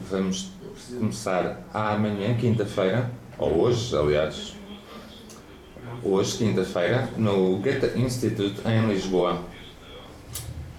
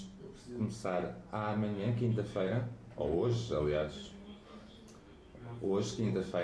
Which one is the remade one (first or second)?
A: first